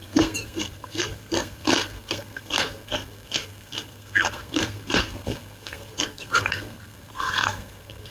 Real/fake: fake